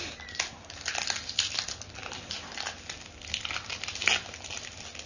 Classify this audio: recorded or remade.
recorded